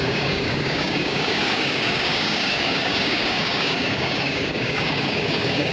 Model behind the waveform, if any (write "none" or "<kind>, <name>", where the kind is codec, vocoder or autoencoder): codec, DAC